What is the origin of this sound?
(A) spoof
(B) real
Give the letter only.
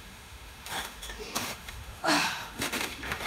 A